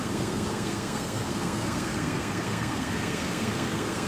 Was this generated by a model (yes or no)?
yes